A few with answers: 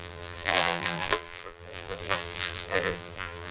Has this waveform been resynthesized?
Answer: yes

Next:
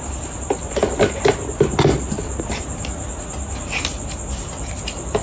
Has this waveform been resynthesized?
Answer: no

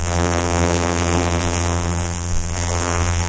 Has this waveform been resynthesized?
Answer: yes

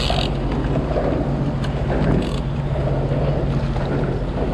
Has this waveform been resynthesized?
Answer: no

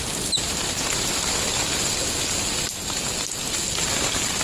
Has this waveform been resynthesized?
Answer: no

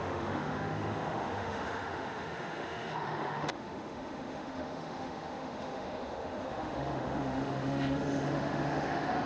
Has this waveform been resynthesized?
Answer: yes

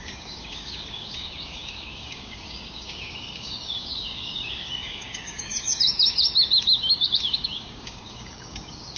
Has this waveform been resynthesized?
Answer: yes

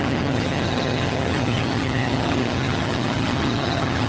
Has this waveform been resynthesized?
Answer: yes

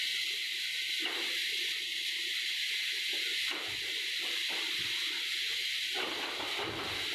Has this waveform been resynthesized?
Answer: no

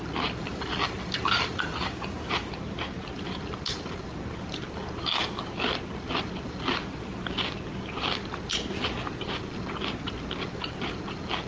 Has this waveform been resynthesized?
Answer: no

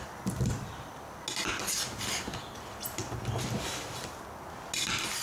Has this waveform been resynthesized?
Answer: no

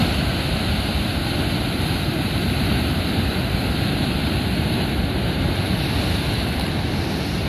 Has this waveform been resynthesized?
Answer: yes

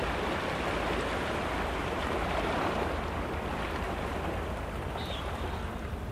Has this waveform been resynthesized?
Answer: yes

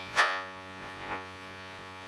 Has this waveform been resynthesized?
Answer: yes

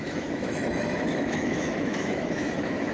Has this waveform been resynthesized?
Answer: yes